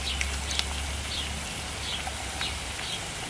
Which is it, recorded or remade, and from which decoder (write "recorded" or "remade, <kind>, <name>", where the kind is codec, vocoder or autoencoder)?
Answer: recorded